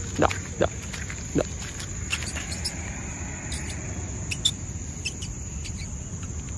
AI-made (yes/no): no